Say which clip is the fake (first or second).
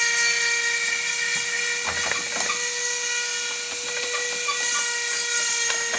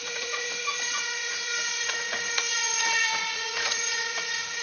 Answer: second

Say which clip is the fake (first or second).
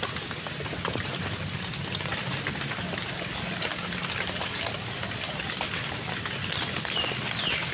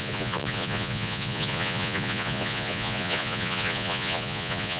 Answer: second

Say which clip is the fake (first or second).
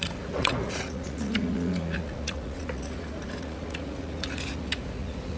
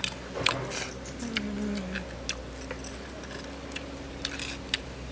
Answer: first